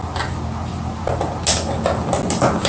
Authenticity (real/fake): real